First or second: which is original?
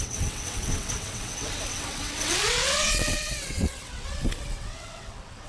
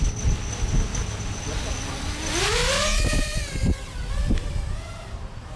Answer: second